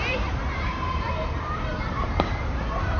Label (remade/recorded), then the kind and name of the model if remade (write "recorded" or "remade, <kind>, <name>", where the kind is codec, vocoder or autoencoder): remade, vocoder, BigVGAN v2